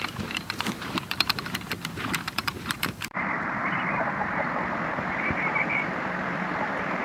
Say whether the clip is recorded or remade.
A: remade